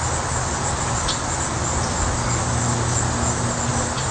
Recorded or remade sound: recorded